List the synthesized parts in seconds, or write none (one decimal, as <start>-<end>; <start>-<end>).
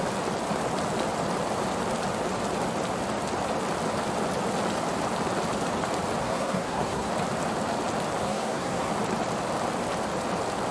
6.2-7.1; 8.2-8.9